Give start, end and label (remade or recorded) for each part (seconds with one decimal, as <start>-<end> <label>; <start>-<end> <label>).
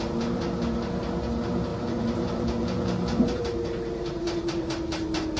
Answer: 0.0-1.7 recorded; 1.7-3.4 remade; 3.4-5.4 recorded